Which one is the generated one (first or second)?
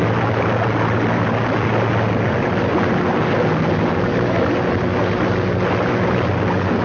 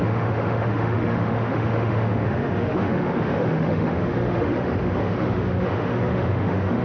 second